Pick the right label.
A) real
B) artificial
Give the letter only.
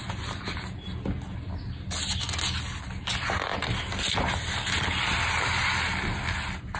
A